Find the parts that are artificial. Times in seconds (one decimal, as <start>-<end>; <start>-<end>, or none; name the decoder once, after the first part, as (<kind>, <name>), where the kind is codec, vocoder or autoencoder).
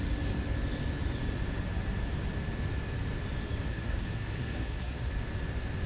3.7-5.1 (codec, SNAC)